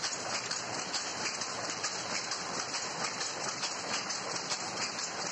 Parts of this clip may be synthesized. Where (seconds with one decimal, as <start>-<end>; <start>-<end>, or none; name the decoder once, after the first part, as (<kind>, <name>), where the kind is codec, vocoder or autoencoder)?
0.0-5.3 (vocoder, BigVGAN v2)

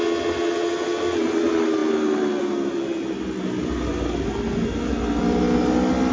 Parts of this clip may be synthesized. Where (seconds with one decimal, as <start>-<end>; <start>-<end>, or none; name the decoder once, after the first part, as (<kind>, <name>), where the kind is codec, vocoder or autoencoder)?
none

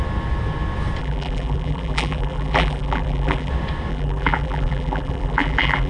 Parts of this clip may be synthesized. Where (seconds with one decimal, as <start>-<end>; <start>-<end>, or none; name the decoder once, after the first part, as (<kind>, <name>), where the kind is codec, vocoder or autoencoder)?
1.0-3.5 (vocoder, BigVGAN v2); 3.9-5.9

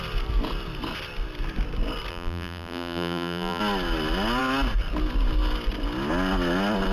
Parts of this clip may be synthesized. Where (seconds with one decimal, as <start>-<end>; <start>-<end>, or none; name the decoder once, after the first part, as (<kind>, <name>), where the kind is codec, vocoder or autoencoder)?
2.1-3.6 (vocoder, BigVGAN v2)

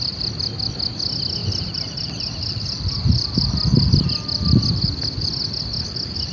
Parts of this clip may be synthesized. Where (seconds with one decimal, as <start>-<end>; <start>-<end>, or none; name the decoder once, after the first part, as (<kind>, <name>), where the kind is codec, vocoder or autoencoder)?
1.4-4.6 (vocoder, BigVGAN v2)